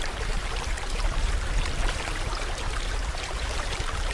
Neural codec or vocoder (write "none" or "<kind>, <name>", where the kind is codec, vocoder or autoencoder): vocoder, BigVGAN v2